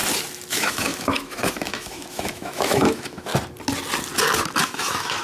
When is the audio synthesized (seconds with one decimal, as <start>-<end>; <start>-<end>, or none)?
0.5-3.3; 4.6-5.2

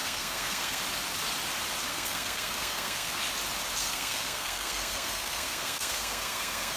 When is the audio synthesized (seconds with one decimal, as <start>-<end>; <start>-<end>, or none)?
0.0-0.8; 1.9-3.2; 3.8-6.8

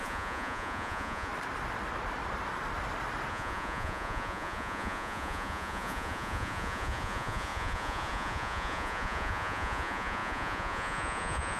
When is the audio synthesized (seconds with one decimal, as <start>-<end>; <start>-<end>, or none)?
0.0-1.3; 3.3-11.6

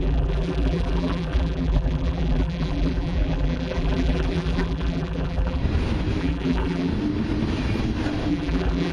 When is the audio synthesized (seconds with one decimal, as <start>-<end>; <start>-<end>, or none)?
0.0-5.6; 6.2-6.9; 8.3-8.9

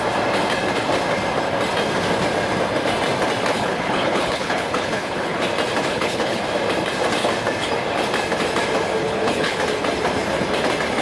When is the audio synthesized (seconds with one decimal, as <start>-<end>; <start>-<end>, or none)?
3.5-5.4; 5.9-6.4; 9.0-9.6